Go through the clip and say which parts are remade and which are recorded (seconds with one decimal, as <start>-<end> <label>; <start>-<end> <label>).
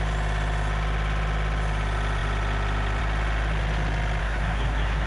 0.0-4.2 recorded; 4.2-5.1 remade